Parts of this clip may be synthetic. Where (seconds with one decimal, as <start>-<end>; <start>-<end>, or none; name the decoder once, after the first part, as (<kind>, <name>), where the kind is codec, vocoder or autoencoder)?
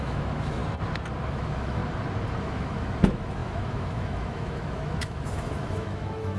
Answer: 0.0-0.6 (autoencoder, DAC-VAE); 1.3-1.8; 2.4-6.4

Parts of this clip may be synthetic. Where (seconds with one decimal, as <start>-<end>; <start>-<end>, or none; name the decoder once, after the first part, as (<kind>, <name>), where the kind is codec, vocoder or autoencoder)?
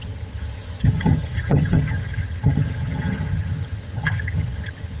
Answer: 0.0-5.0 (vocoder, HiFi-GAN)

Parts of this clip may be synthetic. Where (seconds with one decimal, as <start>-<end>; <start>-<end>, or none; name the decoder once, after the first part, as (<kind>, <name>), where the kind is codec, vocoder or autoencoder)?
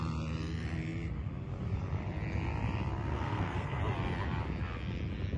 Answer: 3.1-3.8 (codec, SNAC)